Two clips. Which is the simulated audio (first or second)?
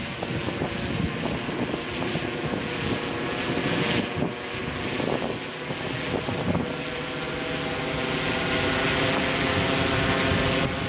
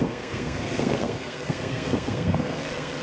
second